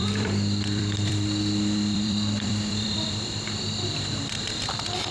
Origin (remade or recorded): remade